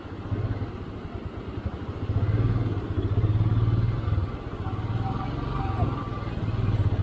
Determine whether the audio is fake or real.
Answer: real